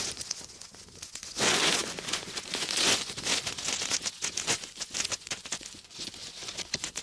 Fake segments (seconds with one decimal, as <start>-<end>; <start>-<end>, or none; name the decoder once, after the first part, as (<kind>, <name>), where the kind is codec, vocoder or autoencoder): 0.0-7.0 (vocoder, Vocos)